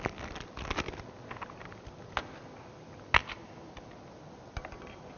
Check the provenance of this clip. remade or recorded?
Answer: recorded